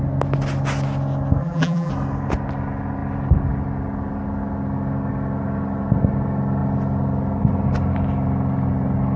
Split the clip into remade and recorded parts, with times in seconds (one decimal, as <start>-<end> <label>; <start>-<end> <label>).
0.0-1.4 recorded; 1.4-1.9 remade; 1.9-9.2 recorded